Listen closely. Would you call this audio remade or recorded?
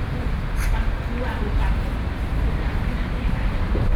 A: remade